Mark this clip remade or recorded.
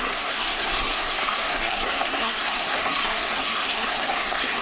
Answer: remade